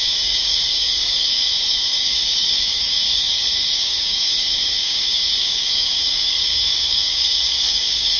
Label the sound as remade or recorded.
remade